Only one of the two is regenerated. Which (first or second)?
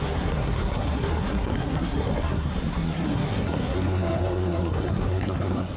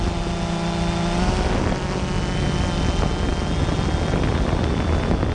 first